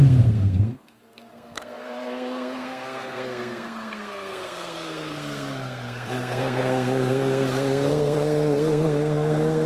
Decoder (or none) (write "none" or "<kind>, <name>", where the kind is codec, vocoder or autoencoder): codec, SNAC